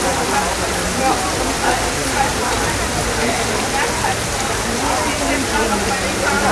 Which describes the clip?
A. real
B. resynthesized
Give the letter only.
A